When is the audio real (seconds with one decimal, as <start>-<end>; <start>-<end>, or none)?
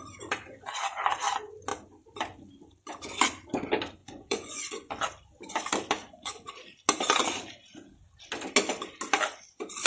0.0-4.0; 4.9-6.0; 6.5-9.9